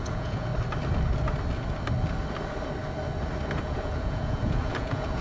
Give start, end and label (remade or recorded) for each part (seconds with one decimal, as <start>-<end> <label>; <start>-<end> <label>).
0.0-0.5 remade; 0.5-3.6 recorded; 3.6-5.2 remade